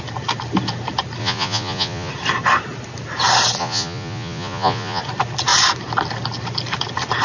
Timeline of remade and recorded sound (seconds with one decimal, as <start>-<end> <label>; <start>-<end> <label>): 0.0-1.2 recorded; 1.2-2.1 remade; 2.1-3.6 recorded; 3.6-5.0 remade; 5.0-7.2 recorded